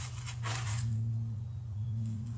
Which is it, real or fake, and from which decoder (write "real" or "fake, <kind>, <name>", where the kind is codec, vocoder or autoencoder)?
fake, vocoder, Vocos